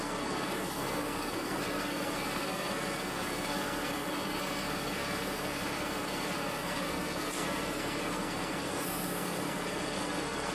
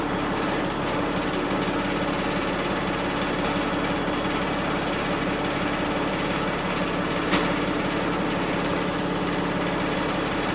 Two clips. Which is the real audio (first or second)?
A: second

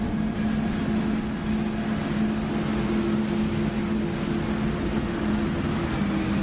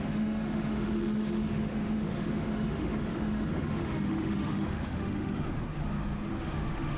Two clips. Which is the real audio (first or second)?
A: first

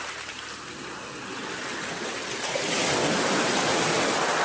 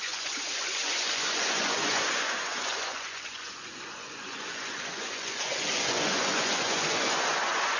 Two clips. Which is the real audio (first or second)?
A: first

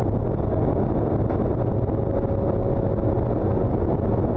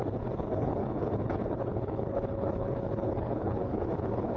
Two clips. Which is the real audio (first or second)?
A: first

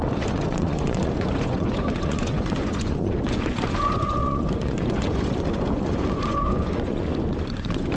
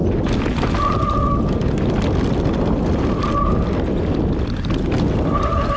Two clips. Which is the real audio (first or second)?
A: second